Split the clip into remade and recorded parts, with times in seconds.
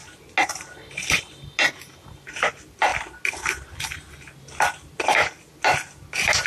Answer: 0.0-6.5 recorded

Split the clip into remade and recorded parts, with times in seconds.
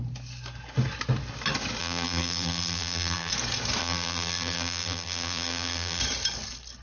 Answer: 0.0-1.8 recorded; 1.8-3.3 remade; 3.3-3.8 recorded; 3.8-6.0 remade; 6.0-6.8 recorded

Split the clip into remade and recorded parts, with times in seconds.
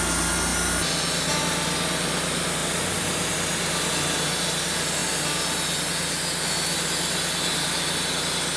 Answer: 0.0-2.6 recorded; 2.6-3.3 remade; 3.3-8.6 recorded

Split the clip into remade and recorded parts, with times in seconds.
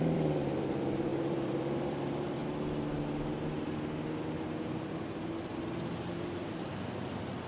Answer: 0.0-2.4 remade; 2.4-6.2 recorded; 6.2-7.5 remade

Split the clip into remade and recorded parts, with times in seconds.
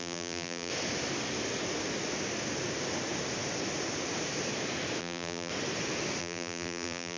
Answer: 0.0-0.7 remade; 0.7-5.0 recorded; 5.0-5.5 remade; 5.5-6.2 recorded; 6.2-7.2 remade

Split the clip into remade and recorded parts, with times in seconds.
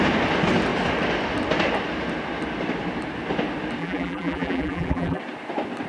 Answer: 0.0-3.8 recorded; 3.8-5.2 remade; 5.2-5.9 recorded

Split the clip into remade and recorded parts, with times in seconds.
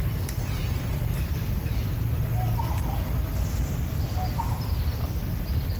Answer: 0.0-5.8 recorded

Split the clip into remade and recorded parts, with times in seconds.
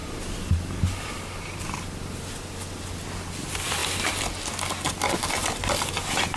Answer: 0.0-1.7 remade; 1.7-6.4 recorded